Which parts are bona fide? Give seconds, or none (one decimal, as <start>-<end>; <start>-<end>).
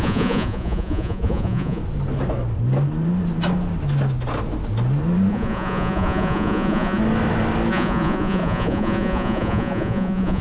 1.8-5.3; 7.0-7.7